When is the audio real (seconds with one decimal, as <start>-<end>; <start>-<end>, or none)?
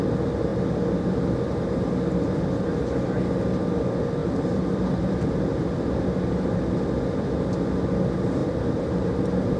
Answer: 0.0-4.2; 6.6-8.4